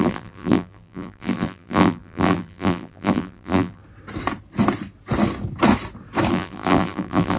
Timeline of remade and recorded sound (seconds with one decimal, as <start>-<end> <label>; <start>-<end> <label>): 0.0-3.8 remade; 3.8-6.3 recorded; 6.3-7.4 remade